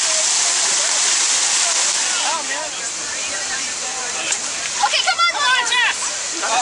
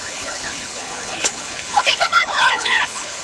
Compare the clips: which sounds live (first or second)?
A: first